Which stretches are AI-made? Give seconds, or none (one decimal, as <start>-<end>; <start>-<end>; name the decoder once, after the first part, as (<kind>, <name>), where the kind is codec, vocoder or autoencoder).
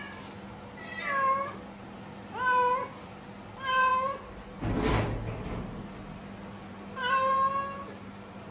none